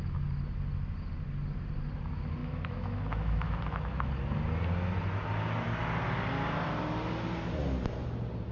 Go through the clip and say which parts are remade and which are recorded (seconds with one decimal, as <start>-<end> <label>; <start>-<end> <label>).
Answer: 0.0-2.4 recorded; 2.4-4.1 remade; 4.1-8.5 recorded